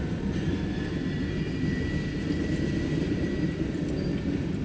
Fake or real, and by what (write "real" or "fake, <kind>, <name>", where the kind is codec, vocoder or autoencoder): real